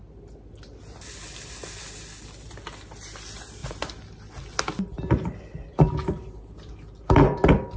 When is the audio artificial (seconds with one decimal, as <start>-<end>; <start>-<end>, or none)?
none